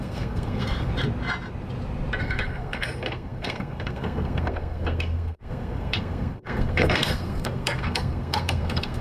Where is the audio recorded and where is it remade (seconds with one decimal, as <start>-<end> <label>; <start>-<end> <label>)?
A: 0.0-0.9 remade; 0.9-2.2 recorded; 2.2-9.0 remade